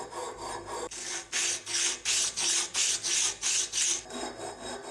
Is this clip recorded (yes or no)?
yes